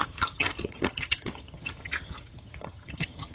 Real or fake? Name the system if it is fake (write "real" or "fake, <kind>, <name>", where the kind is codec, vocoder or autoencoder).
fake, vocoder, HiFi-GAN